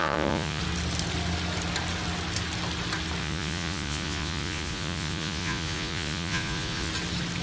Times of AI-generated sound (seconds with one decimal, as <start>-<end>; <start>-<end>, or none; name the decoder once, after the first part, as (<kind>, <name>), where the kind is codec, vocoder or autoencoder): 0.0-0.6 (vocoder, Vocos); 3.2-6.9